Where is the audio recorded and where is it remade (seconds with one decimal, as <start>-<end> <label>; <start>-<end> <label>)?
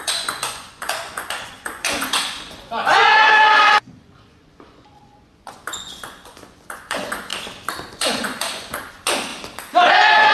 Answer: 0.0-7.3 remade; 7.3-7.9 recorded; 7.9-9.3 remade; 9.3-9.9 recorded; 9.9-10.3 remade